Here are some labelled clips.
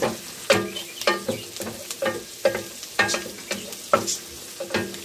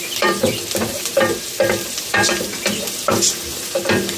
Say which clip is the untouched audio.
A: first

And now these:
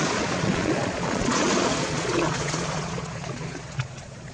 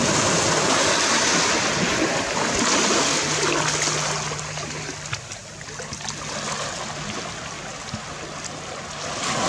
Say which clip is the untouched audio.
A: second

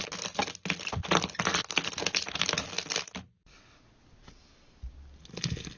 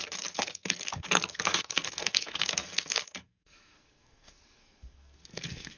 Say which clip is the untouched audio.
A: first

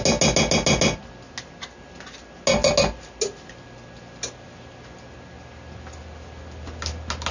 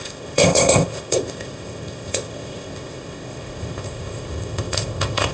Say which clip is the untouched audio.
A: first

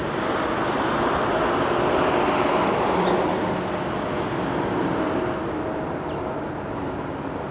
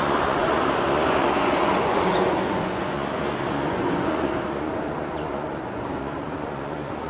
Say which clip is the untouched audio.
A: first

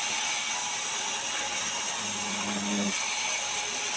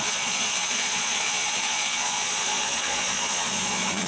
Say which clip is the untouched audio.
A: first